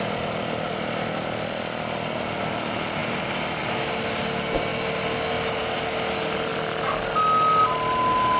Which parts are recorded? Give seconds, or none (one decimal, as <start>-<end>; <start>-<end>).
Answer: 0.0-8.4